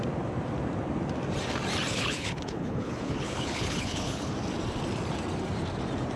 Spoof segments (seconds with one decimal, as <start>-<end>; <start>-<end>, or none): 1.9-4.3